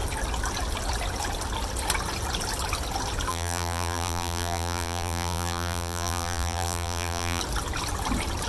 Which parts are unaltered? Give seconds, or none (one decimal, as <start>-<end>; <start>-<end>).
0.0-3.3; 7.4-8.5